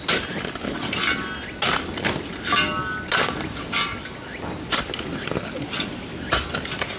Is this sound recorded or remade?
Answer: recorded